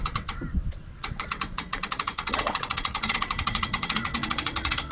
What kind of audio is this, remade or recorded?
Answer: remade